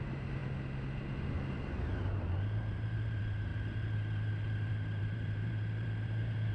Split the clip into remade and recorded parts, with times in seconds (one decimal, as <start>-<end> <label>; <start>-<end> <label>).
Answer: 0.0-0.4 remade; 0.4-1.6 recorded; 1.6-3.5 remade; 3.5-4.7 recorded; 4.7-6.5 remade